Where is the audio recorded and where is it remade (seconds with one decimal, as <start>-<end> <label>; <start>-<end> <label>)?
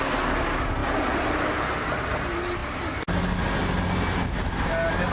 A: 0.0-5.1 recorded